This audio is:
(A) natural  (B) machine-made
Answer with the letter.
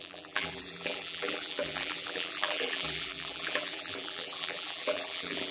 B